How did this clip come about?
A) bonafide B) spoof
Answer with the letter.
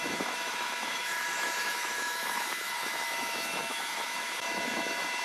B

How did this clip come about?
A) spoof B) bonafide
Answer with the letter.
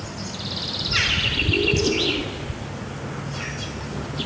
B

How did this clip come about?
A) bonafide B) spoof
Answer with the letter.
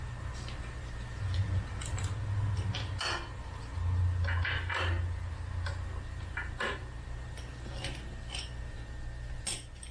A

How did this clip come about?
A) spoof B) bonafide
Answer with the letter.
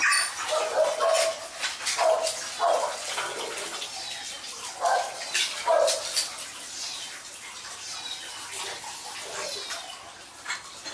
B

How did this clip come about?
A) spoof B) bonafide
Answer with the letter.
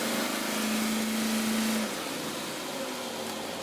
B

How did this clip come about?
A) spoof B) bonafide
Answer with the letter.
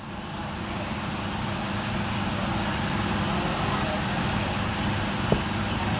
B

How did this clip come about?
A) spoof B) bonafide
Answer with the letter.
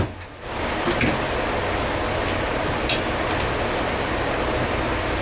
B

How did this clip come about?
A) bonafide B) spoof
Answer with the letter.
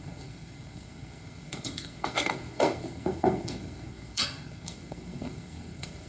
B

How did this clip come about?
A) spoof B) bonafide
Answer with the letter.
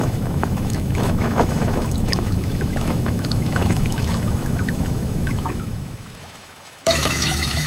A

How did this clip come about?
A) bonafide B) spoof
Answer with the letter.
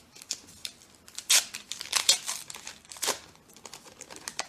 A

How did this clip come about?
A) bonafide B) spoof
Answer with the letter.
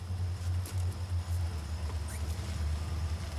A